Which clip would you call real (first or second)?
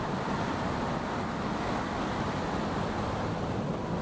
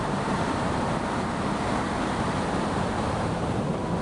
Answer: first